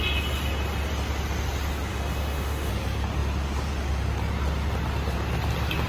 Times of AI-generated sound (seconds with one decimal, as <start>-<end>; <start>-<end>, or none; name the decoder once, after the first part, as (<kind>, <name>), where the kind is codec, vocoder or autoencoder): 1.9-2.7 (autoencoder, DAC-VAE)